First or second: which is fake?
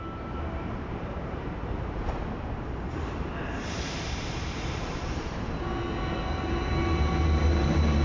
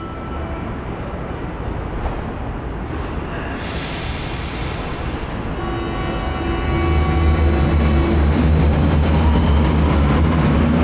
first